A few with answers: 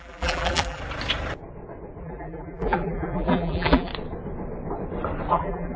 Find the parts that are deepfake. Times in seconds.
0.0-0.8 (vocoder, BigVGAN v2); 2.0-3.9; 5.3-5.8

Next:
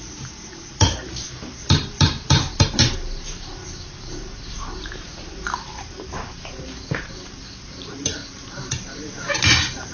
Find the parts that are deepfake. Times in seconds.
0.0-9.9 (vocoder, BigVGAN v2)